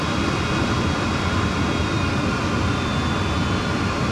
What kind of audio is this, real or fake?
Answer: real